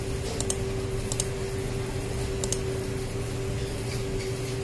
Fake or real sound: real